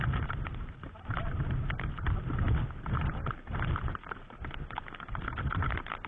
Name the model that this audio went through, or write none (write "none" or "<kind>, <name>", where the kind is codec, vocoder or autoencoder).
none